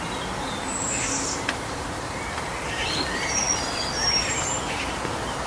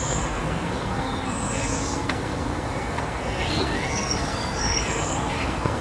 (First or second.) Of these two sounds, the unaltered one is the first